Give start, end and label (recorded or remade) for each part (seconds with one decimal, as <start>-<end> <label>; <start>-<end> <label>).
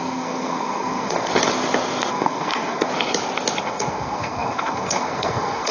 0.0-1.3 remade; 1.3-2.1 recorded; 2.1-2.9 remade; 2.9-3.6 recorded; 3.6-5.7 remade